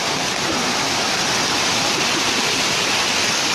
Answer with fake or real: real